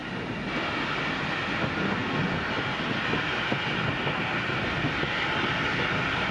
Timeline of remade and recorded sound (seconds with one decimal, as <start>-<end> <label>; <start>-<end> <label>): 0.0-6.3 recorded